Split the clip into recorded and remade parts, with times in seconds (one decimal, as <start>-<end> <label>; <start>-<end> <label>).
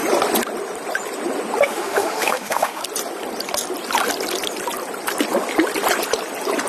0.0-1.6 recorded; 1.6-2.8 remade; 2.8-6.7 recorded